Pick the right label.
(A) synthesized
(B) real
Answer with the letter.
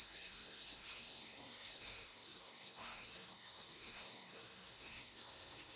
A